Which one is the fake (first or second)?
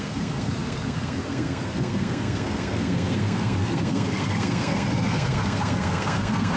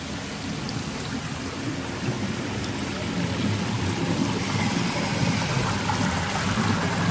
first